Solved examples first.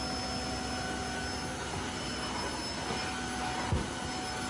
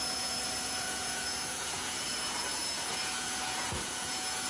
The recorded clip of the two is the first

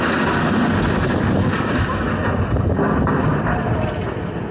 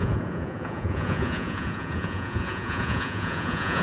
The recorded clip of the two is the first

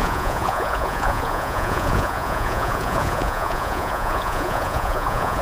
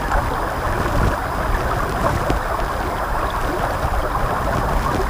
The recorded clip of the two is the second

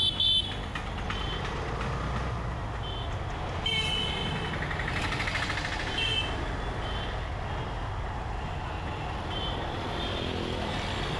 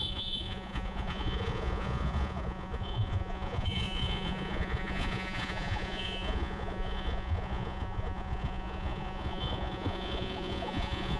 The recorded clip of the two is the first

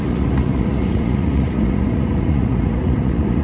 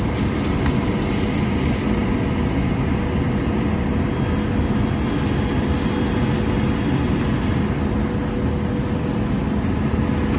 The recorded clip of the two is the second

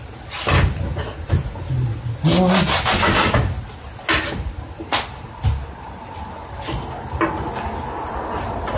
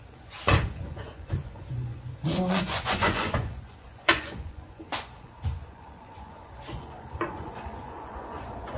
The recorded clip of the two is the first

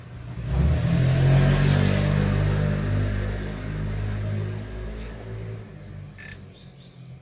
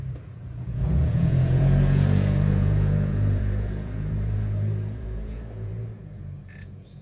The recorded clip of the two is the first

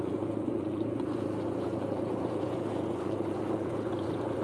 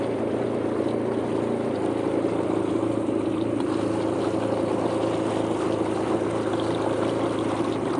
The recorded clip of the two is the second